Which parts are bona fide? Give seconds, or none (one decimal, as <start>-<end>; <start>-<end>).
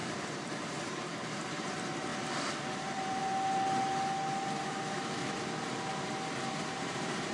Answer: 2.1-2.7; 3.2-4.6; 5.2-6.7